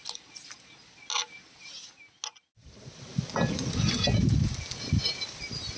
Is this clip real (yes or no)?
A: yes